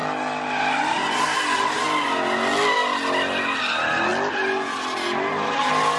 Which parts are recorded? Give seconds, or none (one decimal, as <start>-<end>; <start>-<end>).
0.0-6.0